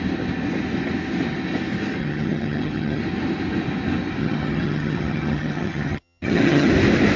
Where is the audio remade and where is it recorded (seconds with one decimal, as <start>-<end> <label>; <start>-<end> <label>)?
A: 0.0-2.0 recorded; 2.0-3.0 remade; 3.0-4.2 recorded; 4.2-6.7 remade; 6.7-7.2 recorded